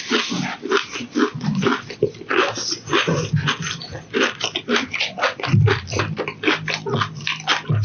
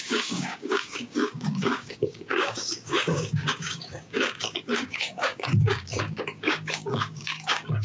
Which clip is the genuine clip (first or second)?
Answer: first